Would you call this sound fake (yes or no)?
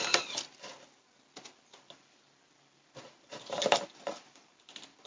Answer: no